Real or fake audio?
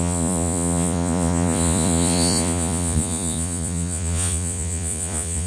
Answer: fake